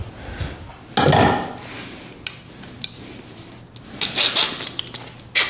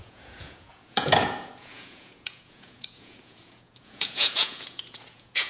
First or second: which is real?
first